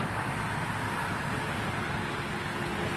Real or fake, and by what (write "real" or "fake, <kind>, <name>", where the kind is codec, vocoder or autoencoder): real